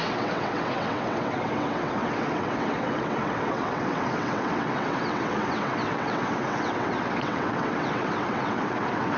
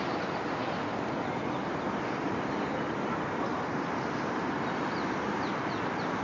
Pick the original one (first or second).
second